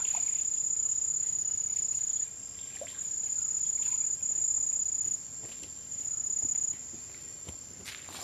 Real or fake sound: real